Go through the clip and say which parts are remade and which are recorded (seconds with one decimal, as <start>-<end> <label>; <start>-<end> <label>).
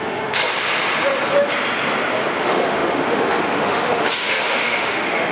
0.0-0.4 remade; 0.4-2.4 recorded; 2.4-5.3 remade